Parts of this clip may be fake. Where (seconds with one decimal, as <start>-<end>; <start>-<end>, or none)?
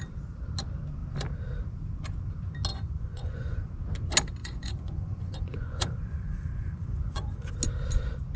2.7-3.7; 4.4-7.5